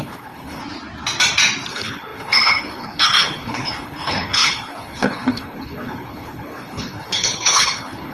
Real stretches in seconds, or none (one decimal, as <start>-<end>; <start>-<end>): 0.6-1.7